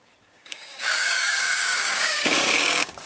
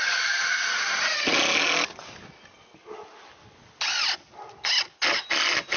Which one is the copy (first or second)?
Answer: first